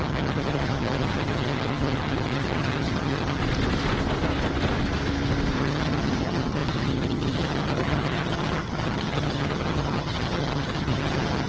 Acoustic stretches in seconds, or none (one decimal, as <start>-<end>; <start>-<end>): 3.4-5.6